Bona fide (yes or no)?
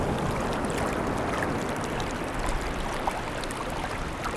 yes